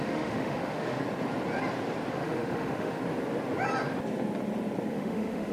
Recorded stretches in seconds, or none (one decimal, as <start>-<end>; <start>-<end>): 1.0-2.1; 3.0-4.9